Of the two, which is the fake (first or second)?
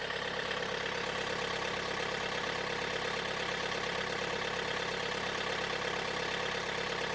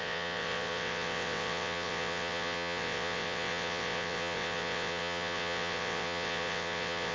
second